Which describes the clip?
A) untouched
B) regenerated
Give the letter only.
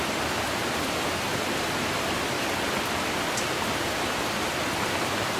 A